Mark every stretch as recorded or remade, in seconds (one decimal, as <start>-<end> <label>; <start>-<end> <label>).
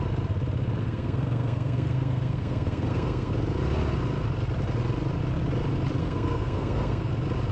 0.0-0.8 recorded; 0.8-3.3 remade; 3.3-6.0 recorded; 6.0-7.1 remade; 7.1-7.5 recorded